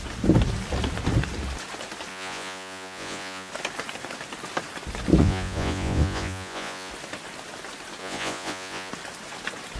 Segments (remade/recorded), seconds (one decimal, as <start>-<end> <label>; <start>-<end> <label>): 0.0-2.1 recorded; 2.1-3.5 remade; 3.5-5.2 recorded; 5.2-6.9 remade; 6.9-8.0 recorded; 8.0-8.9 remade; 8.9-9.8 recorded

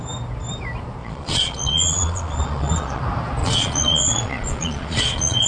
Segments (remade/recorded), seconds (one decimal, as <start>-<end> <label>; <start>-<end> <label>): 0.0-1.0 recorded; 1.0-3.0 remade; 3.0-3.4 recorded; 3.4-5.5 remade

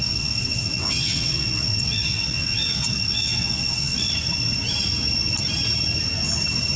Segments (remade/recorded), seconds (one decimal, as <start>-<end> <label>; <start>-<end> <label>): 0.0-4.1 remade; 4.1-6.8 recorded

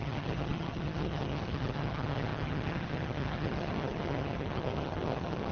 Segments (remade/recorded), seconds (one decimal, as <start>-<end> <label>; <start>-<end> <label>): 0.0-5.5 remade

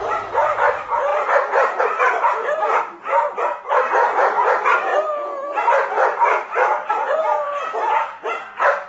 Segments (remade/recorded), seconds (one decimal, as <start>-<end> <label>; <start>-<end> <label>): 0.0-4.9 remade; 4.9-6.9 recorded; 6.9-7.6 remade; 7.6-8.3 recorded; 8.3-8.9 remade

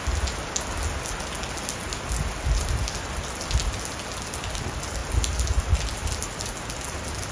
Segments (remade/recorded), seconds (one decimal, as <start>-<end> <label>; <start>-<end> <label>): 0.0-7.3 recorded

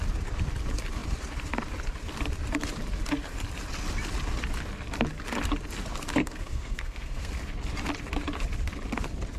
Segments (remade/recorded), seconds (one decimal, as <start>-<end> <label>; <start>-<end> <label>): 0.0-6.2 recorded; 6.2-7.3 remade; 7.3-9.4 recorded

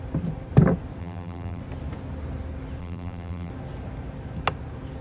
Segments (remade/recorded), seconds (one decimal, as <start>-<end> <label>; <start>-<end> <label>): 0.0-1.0 recorded; 1.0-1.6 remade; 1.6-2.8 recorded; 2.8-3.5 remade; 3.5-5.0 recorded